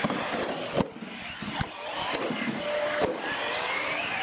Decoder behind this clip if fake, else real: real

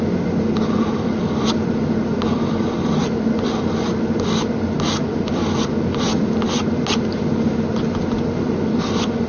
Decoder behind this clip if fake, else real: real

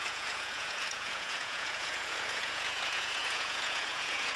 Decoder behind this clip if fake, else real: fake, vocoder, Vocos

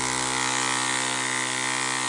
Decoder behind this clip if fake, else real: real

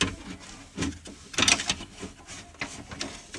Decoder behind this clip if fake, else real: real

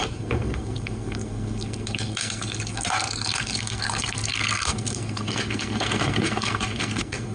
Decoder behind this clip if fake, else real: fake, codec, SNAC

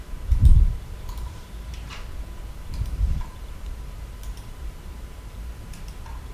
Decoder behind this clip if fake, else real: fake, vocoder, BigVGAN v2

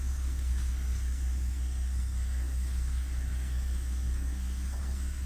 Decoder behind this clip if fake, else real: fake, codec, SNAC